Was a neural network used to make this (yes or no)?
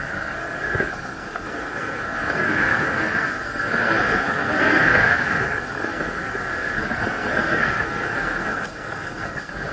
yes